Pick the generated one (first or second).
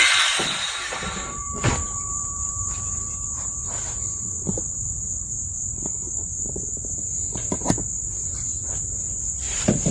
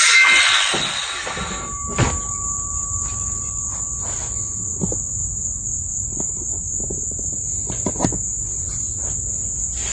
first